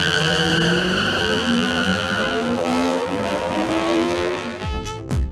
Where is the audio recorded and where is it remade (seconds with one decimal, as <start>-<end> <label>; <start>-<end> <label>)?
0.0-0.5 remade; 0.5-1.2 recorded; 1.2-5.3 remade